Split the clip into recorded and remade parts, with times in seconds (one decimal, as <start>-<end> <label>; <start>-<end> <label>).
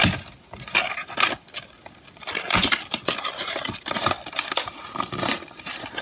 0.0-6.0 recorded